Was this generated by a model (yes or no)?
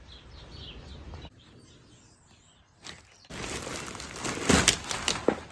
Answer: no